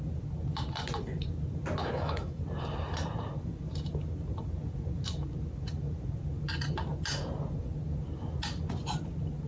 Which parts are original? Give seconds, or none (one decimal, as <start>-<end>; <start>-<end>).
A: 0.0-1.8; 2.4-9.5